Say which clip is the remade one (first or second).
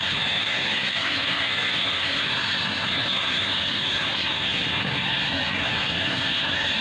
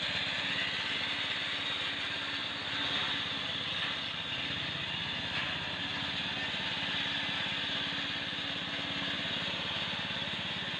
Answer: first